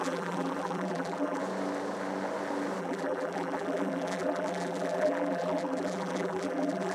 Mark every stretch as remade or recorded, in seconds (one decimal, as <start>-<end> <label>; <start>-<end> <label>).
0.0-1.4 remade; 1.4-2.8 recorded; 2.8-6.9 remade